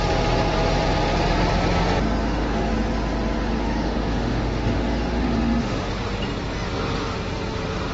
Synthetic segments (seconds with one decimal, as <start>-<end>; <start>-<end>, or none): 2.2-2.7; 3.6-5.9